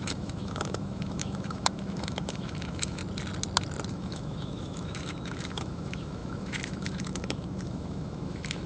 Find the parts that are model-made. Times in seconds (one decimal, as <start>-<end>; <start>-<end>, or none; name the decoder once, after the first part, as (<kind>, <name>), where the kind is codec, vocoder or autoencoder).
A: 0.0-3.0 (autoencoder, DAC-VAE); 3.9-8.7